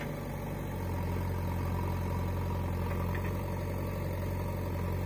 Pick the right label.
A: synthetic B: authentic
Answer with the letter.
B